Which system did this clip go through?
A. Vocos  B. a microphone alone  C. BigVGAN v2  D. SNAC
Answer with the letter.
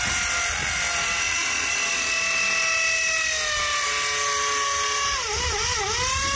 B